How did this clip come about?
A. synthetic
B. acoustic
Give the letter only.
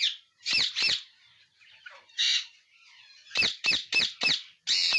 B